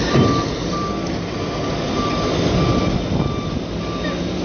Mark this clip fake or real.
real